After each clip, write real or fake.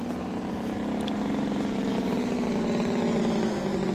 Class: real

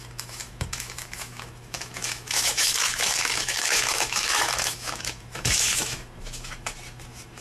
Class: fake